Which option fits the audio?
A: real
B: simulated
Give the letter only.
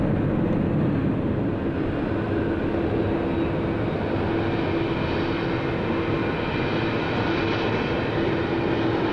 A